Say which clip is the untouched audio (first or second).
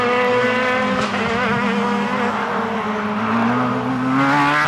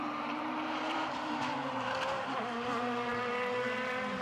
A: first